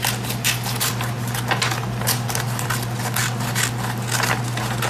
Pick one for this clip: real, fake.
real